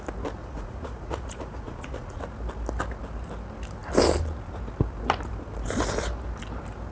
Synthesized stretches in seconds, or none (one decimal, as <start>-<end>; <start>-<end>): 0.4-2.2